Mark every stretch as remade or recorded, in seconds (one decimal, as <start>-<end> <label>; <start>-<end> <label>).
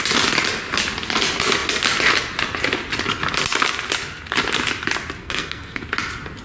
0.0-5.2 recorded; 5.2-5.8 remade; 5.8-6.4 recorded